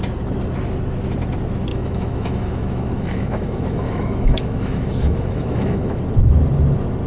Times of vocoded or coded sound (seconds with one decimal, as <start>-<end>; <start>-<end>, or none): 1.7-6.0